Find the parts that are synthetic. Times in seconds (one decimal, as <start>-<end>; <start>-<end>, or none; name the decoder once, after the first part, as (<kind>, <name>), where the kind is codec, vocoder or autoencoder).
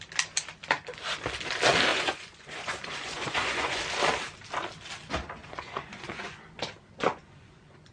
1.9-3.8 (vocoder, Vocos); 5.4-6.4; 7.1-7.9